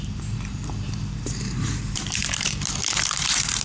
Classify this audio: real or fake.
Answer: fake